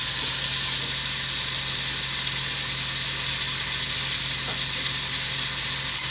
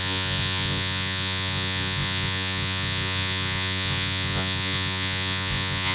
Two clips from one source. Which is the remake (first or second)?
second